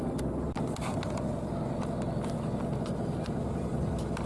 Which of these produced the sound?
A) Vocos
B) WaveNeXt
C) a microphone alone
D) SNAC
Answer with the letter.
C